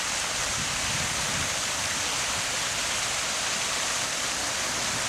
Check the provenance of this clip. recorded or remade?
recorded